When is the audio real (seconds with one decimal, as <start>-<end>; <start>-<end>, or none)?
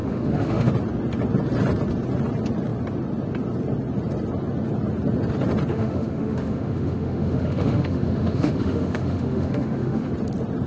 0.7-5.7; 10.1-10.7